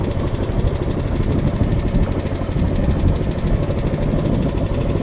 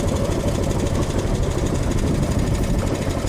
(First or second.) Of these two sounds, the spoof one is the second